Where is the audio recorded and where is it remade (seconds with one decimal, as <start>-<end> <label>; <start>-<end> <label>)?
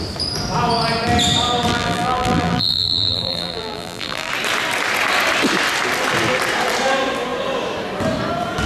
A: 0.0-1.7 recorded; 1.7-4.3 remade; 4.3-8.7 recorded